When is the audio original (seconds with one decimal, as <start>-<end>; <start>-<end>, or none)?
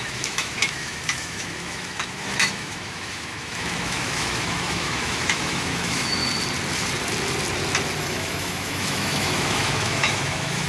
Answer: 6.2-8.0